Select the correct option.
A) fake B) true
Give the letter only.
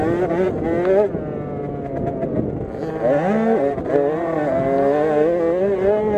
B